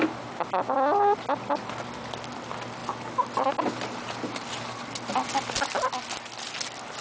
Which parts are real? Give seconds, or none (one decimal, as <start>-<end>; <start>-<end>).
0.0-2.8; 3.5-7.0